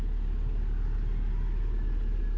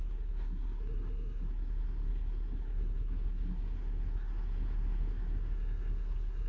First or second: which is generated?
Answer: second